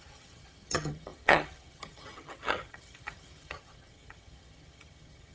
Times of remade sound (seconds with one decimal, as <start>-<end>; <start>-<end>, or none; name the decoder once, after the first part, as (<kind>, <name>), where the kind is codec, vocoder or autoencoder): 0.0-5.3 (vocoder, HiFi-GAN)

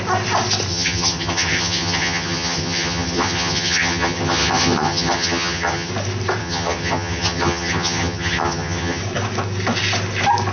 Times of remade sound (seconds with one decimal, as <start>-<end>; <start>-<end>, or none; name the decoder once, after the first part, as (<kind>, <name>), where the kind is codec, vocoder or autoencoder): 0.7-5.9 (vocoder, HiFi-GAN); 6.4-9.0

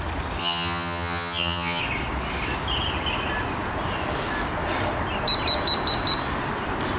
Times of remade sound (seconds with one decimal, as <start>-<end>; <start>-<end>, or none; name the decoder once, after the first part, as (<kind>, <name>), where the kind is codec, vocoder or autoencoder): 0.4-1.8 (vocoder, HiFi-GAN)

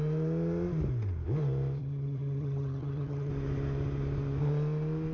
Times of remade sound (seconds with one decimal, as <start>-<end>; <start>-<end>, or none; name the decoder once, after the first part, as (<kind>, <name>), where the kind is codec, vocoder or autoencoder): 1.8-3.3 (vocoder, HiFi-GAN)

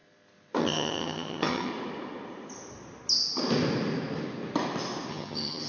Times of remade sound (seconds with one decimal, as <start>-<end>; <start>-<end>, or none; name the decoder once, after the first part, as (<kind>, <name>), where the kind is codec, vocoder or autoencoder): 0.6-1.7 (vocoder, HiFi-GAN); 5.1-5.7

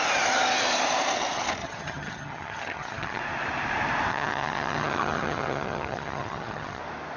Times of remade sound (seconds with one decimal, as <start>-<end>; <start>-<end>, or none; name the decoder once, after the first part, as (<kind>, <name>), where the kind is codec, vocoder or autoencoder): 1.6-3.2 (vocoder, HiFi-GAN); 4.1-6.8

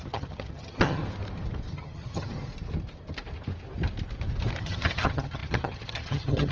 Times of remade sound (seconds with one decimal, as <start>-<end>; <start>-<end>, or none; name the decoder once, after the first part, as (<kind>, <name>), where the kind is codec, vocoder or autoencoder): 0.0-1.0 (vocoder, HiFi-GAN); 1.7-2.5; 4.6-6.5